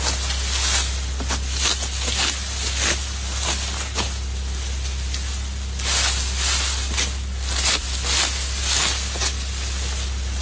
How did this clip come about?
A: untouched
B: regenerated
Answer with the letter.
A